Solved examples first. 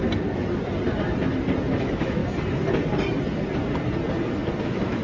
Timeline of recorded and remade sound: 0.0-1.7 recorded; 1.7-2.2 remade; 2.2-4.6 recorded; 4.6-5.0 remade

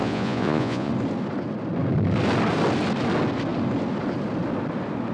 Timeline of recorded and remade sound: 0.0-0.9 remade; 0.9-5.1 recorded